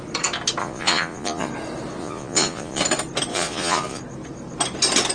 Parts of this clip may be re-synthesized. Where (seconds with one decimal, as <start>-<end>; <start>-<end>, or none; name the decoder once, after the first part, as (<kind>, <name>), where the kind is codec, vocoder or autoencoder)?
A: 0.6-1.5 (vocoder, Vocos); 2.0-2.8; 3.3-4.0